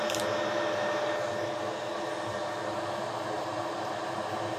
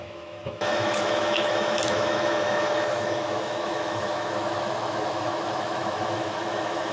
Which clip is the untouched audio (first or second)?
first